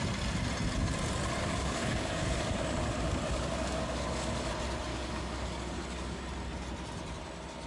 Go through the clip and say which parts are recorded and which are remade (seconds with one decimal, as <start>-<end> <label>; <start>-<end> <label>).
0.0-1.4 recorded; 1.4-4.5 remade; 4.5-4.9 recorded; 4.9-6.2 remade; 6.2-7.7 recorded